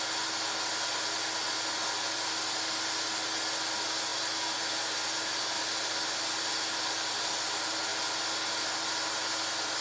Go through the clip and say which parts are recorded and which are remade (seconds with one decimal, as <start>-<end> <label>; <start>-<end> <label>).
0.0-9.8 recorded